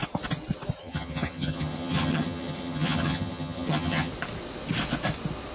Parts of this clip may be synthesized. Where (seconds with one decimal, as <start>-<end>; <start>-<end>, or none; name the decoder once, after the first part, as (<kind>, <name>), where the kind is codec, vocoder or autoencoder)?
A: 0.8-4.1 (vocoder, HiFi-GAN)